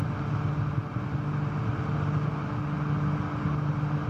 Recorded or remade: recorded